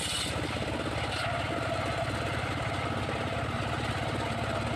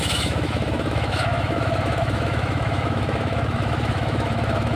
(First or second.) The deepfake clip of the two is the second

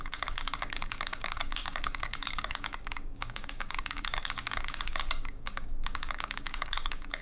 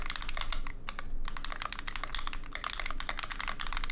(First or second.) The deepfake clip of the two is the first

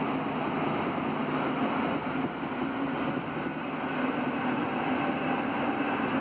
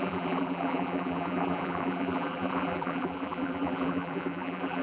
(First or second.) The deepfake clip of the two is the second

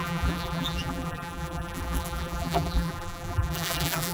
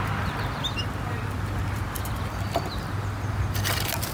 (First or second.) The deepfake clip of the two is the first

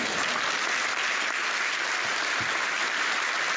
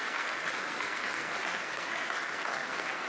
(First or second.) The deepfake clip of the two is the second